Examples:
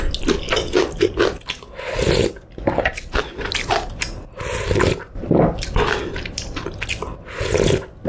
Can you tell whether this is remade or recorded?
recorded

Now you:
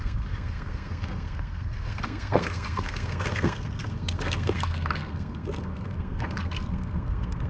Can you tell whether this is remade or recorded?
remade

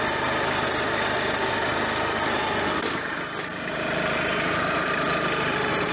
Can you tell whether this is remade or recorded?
recorded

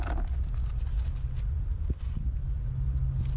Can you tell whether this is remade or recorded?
recorded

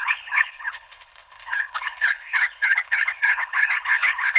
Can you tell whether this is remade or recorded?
remade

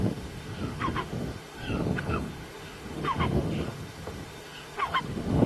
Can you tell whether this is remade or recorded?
remade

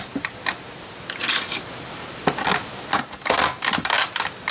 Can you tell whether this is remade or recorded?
recorded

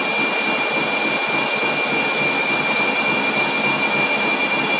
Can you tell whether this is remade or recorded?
recorded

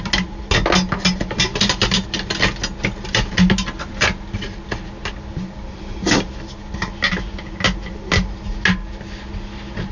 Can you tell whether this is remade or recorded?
recorded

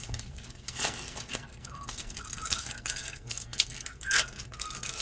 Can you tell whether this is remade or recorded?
remade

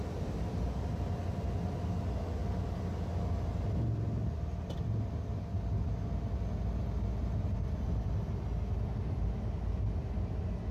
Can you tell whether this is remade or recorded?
recorded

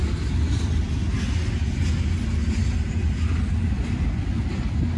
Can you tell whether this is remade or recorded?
recorded